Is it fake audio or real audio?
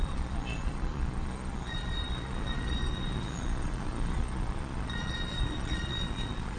fake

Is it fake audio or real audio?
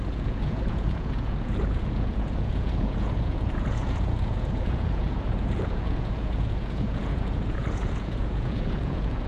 fake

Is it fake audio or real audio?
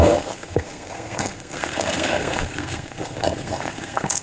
fake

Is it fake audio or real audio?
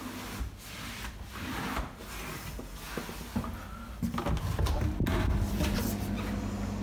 real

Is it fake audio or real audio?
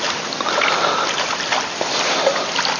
fake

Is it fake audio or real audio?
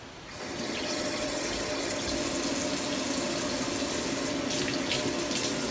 real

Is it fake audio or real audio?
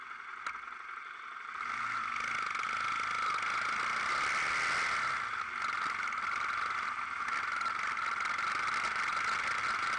real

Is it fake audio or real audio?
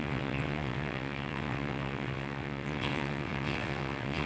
fake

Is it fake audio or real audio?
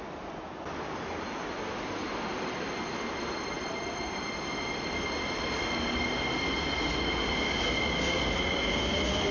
real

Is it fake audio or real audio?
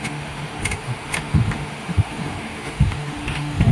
fake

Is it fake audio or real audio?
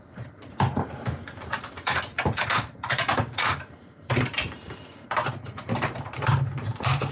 fake